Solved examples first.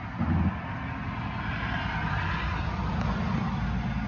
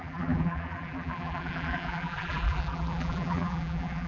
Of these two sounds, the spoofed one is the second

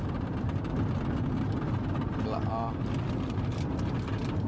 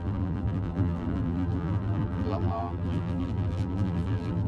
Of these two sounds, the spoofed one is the second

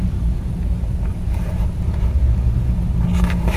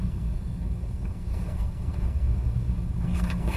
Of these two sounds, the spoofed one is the second